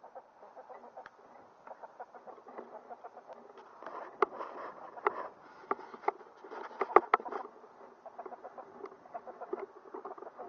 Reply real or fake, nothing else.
real